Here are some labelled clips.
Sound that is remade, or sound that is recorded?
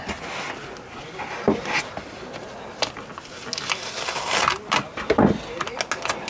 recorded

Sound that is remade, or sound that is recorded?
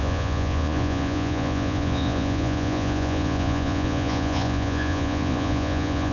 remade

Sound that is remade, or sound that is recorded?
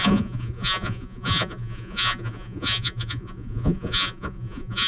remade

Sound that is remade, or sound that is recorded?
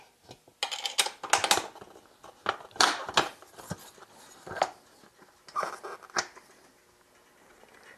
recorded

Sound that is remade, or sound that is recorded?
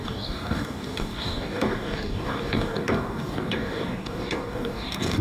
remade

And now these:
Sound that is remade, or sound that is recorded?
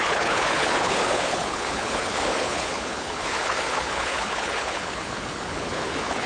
remade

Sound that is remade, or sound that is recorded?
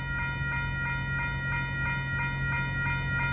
recorded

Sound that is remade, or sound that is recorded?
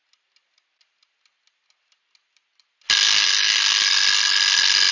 recorded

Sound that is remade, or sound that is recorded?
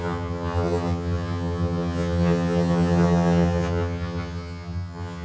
remade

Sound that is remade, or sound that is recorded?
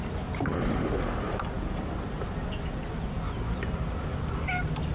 recorded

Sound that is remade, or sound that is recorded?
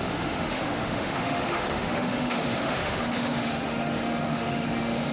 remade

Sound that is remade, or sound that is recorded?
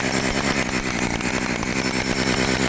recorded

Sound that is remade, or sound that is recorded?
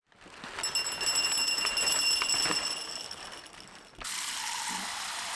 recorded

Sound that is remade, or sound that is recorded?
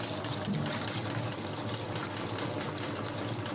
recorded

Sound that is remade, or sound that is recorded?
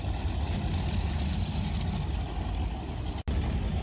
recorded